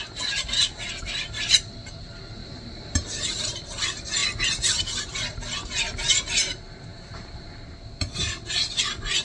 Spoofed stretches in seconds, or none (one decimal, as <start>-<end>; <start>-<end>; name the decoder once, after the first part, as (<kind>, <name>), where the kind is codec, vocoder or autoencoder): 0.4-1.5 (vocoder, BigVGAN v2); 2.4-3.3; 6.9-7.6

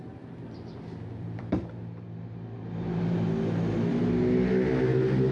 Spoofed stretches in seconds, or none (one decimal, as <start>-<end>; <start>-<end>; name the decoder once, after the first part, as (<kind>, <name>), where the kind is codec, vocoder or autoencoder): 0.0-1.8 (vocoder, BigVGAN v2)

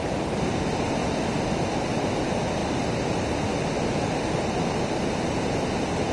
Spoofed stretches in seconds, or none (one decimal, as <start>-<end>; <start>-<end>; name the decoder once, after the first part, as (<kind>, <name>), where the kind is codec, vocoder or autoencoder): none